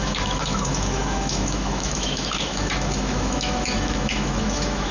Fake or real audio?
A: fake